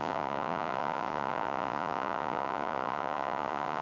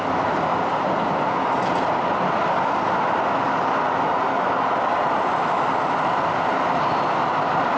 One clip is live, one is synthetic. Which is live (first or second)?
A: second